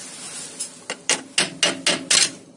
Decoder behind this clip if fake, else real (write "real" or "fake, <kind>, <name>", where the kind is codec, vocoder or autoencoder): real